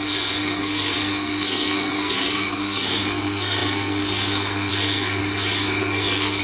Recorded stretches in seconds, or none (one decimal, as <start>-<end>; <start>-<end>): 5.2-5.8